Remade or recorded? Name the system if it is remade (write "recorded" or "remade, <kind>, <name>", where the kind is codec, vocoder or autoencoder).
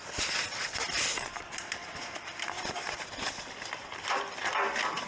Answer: remade, vocoder, BigVGAN v2